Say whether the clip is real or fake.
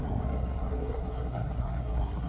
fake